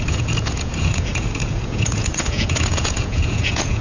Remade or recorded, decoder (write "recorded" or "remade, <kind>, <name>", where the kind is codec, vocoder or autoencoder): remade, vocoder, Vocos